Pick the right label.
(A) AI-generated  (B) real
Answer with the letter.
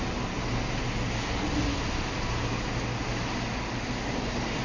B